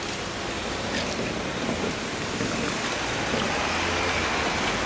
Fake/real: real